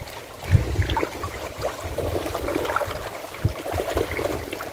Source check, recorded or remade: recorded